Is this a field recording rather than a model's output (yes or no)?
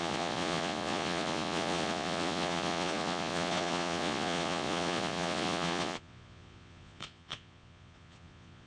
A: no